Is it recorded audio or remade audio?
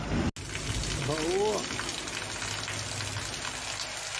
recorded